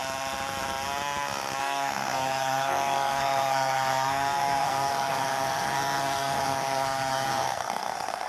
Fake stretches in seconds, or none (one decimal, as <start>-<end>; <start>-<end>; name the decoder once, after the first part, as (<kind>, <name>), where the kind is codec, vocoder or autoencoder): 1.6-8.3 (codec, SNAC)